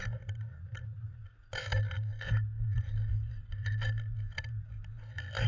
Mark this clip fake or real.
real